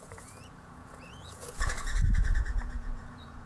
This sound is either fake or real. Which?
fake